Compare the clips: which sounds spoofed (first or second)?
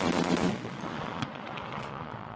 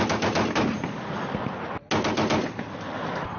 first